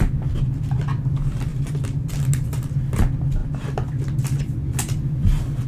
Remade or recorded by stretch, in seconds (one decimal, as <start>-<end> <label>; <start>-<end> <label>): 0.0-5.7 recorded